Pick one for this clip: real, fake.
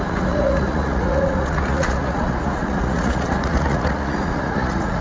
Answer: fake